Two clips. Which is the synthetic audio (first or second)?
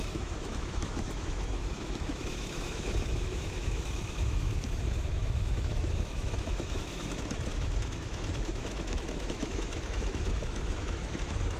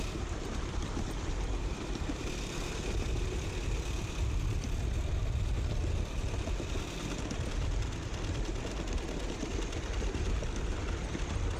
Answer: first